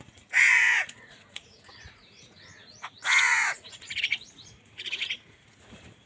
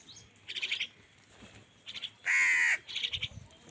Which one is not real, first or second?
first